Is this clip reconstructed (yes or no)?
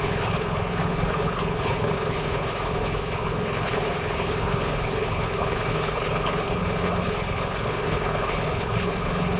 yes